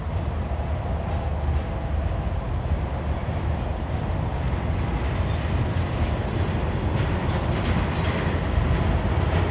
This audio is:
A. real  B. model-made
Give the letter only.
A